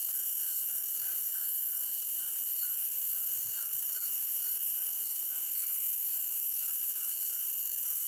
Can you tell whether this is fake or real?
fake